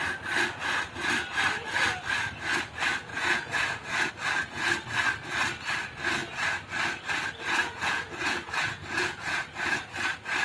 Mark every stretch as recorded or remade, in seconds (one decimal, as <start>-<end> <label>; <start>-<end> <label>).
0.0-3.1 recorded; 3.1-4.1 remade; 4.1-7.6 recorded; 7.6-9.4 remade; 9.4-10.4 recorded